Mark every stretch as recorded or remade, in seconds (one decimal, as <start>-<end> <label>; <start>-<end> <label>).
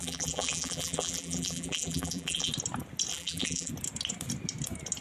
0.0-2.5 remade; 2.5-3.1 recorded; 3.1-3.7 remade; 3.7-5.0 recorded